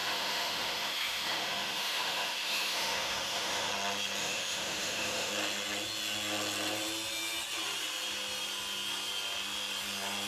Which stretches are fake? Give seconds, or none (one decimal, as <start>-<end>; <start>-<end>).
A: 0.0-3.7; 4.2-5.3